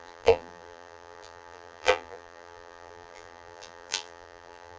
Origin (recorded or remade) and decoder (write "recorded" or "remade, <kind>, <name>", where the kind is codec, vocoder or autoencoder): remade, vocoder, BigVGAN v2